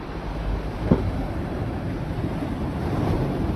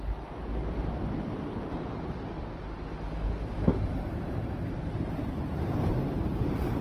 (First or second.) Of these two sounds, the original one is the second